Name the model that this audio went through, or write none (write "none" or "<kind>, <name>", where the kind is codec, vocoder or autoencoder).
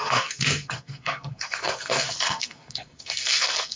codec, SNAC